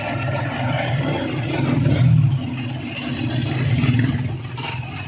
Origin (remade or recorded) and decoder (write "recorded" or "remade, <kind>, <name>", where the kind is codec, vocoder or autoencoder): recorded